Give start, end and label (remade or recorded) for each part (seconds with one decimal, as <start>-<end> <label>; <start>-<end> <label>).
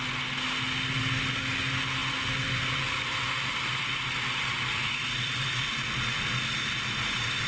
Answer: 0.0-7.5 recorded